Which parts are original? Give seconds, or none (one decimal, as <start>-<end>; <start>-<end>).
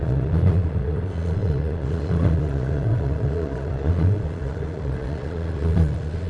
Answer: none